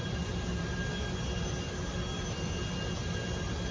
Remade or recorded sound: recorded